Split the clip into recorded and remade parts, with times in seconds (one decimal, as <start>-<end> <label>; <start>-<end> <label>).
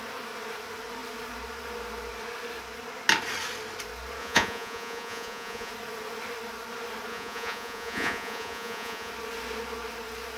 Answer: 0.0-4.2 recorded; 4.2-5.7 remade; 5.7-7.1 recorded; 7.1-9.1 remade; 9.1-10.4 recorded